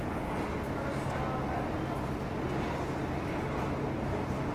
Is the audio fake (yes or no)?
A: no